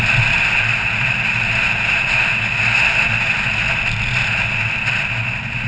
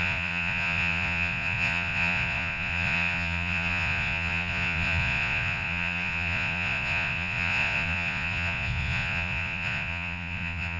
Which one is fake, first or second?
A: second